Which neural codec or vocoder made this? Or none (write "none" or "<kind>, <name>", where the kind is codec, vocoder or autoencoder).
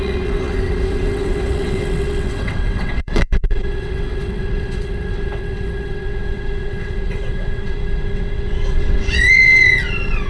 vocoder, WaveNeXt